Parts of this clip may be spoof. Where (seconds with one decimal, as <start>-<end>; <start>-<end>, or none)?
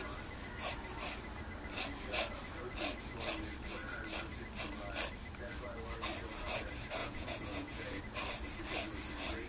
7.0-8.0